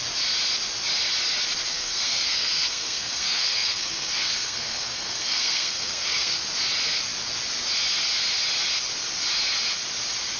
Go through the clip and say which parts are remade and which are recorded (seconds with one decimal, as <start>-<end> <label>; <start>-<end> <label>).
0.0-1.7 recorded; 1.7-6.4 remade; 6.4-10.4 recorded